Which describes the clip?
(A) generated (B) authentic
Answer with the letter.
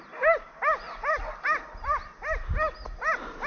B